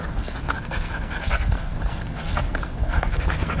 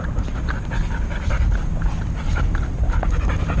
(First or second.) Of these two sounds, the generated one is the first